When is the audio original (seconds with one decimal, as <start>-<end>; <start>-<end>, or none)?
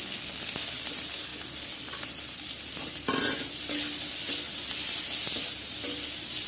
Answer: 0.0-6.5